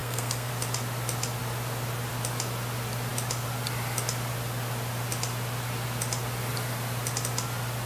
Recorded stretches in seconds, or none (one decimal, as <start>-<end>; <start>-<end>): 0.5-7.9